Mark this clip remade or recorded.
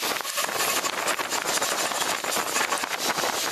recorded